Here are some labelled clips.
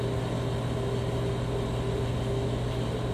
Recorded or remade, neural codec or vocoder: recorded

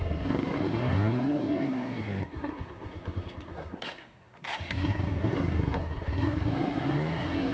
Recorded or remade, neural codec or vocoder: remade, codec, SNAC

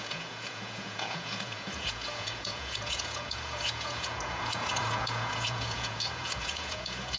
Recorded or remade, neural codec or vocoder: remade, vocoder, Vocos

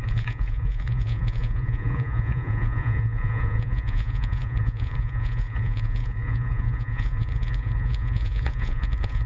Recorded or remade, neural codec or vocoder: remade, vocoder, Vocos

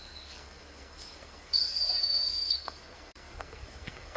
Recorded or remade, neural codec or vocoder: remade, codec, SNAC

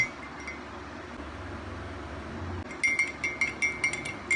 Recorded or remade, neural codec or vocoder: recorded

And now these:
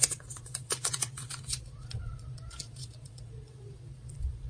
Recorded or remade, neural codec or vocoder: remade, vocoder, Vocos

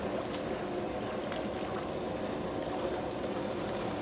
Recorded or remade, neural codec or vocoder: recorded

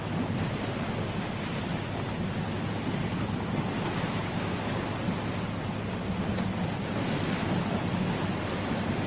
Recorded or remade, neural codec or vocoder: recorded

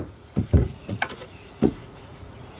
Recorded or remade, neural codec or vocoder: remade, vocoder, Vocos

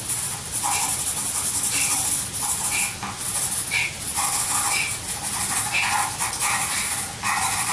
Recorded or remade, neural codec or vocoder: recorded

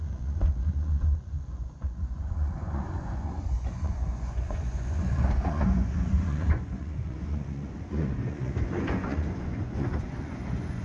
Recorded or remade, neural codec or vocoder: remade, vocoder, Vocos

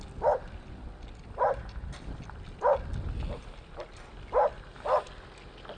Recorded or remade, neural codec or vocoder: recorded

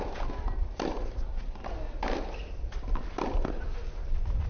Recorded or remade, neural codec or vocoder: recorded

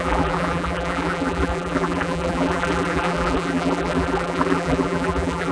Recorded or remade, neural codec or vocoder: remade, vocoder, BigVGAN v2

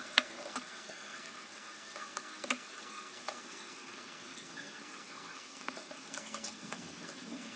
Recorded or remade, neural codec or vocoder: remade, codec, SNAC